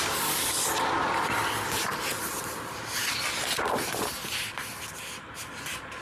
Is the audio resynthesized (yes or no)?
no